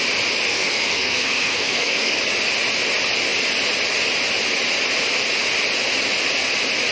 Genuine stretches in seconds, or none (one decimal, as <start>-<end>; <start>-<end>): 0.0-0.5; 2.2-6.9